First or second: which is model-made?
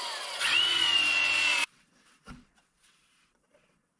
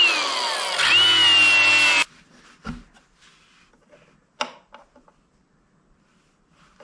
first